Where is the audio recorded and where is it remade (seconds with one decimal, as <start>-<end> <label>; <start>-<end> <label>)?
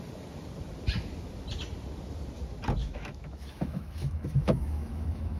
0.0-2.8 recorded; 2.8-5.4 remade